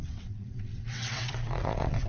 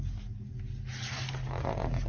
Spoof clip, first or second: first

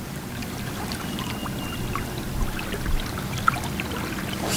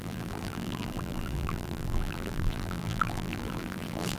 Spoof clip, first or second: second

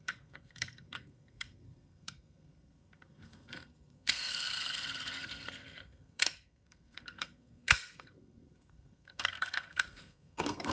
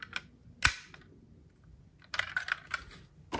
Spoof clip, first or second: first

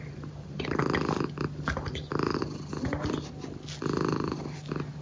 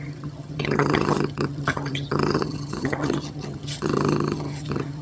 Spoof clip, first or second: second